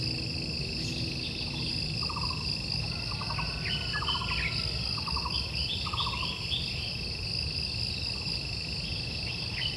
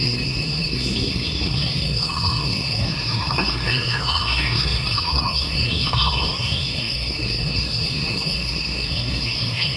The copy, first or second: second